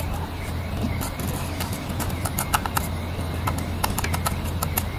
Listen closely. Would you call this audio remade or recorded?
recorded